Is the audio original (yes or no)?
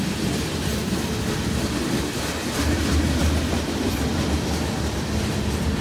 yes